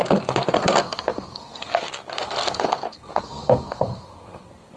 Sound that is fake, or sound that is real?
fake